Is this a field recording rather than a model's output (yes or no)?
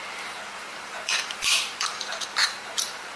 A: no